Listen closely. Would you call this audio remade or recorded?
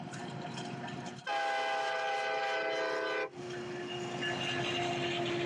recorded